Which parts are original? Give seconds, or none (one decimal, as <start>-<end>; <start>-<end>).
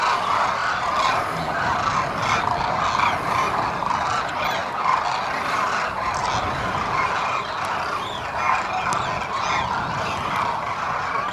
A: 0.0-11.3